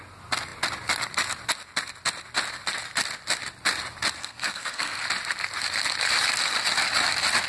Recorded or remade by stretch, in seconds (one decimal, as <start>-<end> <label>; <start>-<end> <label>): 0.0-4.2 recorded; 4.2-5.0 remade; 5.0-7.5 recorded